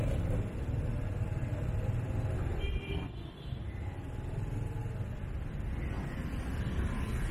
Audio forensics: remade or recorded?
recorded